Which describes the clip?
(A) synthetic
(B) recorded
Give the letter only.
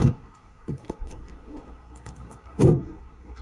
A